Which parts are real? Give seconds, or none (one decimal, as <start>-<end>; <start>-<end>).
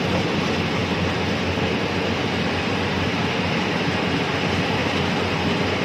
0.0-5.8